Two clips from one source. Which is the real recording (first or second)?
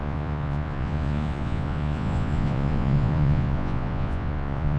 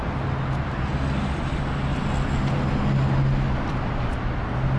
second